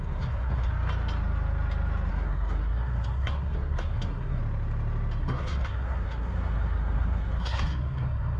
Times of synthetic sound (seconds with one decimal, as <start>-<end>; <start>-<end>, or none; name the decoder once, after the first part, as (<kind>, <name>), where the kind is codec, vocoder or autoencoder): 0.0-0.7 (codec, SNAC); 2.1-4.4; 5.2-8.4